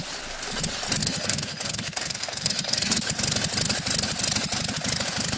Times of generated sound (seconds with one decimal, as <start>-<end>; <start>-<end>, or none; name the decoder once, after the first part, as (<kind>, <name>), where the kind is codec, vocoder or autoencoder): 1.0-3.0 (codec, SNAC)